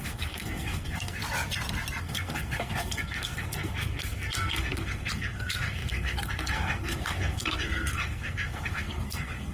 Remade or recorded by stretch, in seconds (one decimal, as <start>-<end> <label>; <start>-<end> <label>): 0.0-1.2 remade; 1.2-2.0 recorded; 2.0-9.5 remade